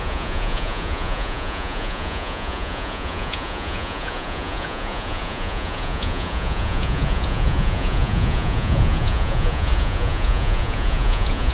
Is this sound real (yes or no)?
no